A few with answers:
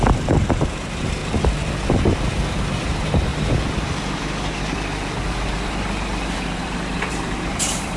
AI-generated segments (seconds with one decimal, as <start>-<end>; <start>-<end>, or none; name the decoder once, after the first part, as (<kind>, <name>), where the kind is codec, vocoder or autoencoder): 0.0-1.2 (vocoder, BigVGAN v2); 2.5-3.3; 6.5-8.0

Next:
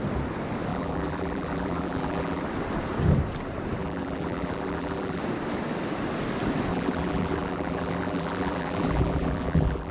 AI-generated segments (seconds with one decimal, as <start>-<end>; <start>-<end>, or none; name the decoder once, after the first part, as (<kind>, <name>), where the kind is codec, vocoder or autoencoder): 0.7-2.4 (vocoder, BigVGAN v2); 3.8-5.2; 6.7-9.9

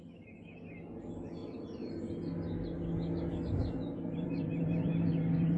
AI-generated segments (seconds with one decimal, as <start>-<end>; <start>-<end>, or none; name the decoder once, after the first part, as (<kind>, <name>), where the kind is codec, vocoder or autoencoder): 1.4-1.9 (vocoder, BigVGAN v2); 3.6-5.6